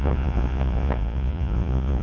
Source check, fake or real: fake